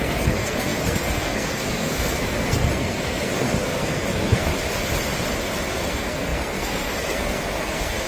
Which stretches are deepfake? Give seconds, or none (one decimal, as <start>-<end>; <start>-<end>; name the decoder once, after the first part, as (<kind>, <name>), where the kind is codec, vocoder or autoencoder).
0.0-4.5 (codec, SNAC); 5.7-8.1